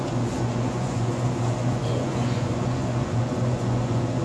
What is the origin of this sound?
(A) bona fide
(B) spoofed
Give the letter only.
B